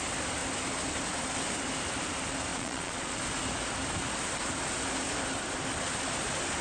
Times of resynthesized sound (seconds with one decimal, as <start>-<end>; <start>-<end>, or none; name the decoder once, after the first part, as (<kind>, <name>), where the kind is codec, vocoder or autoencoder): 2.5-3.2 (vocoder, Vocos)